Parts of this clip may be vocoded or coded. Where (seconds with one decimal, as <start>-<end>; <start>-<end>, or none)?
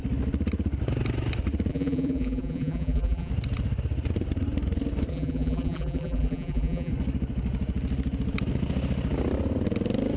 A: 1.7-3.3; 5.1-6.9